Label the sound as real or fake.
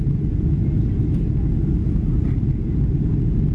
real